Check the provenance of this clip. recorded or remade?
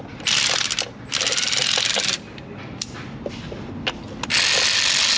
recorded